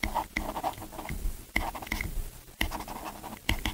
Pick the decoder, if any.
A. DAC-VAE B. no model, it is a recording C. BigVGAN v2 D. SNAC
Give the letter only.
B